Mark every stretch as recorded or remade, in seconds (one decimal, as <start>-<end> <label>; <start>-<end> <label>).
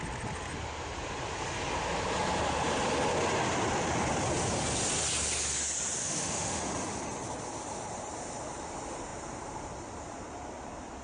0.0-6.0 recorded; 6.0-6.6 remade; 6.6-11.0 recorded